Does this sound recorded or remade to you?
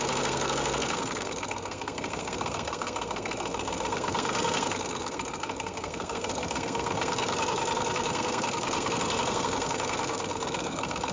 remade